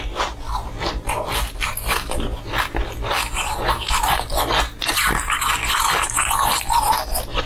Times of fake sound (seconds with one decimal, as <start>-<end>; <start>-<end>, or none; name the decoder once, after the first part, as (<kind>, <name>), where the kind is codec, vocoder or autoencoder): none